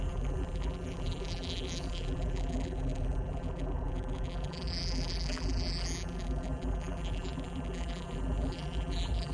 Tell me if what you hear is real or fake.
fake